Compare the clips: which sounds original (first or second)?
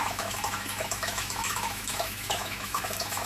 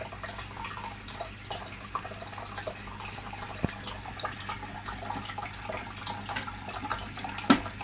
second